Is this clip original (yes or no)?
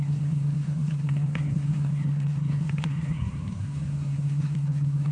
no